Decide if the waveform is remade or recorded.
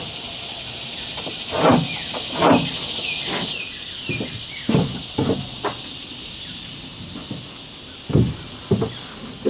recorded